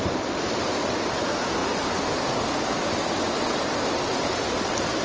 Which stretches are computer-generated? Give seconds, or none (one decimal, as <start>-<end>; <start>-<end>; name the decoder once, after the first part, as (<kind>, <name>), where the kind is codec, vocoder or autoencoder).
none